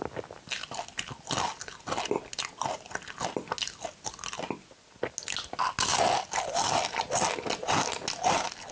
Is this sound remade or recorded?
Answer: recorded